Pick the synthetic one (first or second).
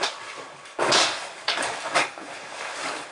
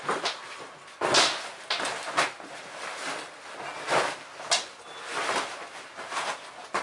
first